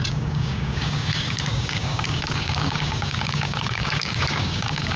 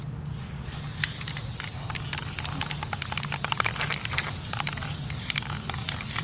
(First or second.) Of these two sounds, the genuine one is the second